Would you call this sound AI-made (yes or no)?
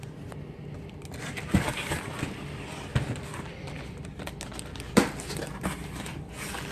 no